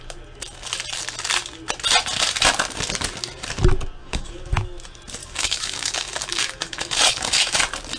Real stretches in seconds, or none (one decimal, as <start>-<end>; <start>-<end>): 0.0-4.0; 4.5-5.2; 7.6-8.0